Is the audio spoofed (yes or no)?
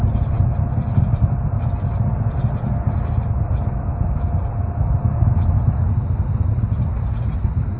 no